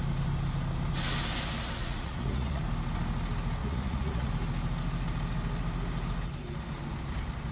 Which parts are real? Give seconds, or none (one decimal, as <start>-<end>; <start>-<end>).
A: 0.0-1.8; 2.6-3.6; 4.3-7.5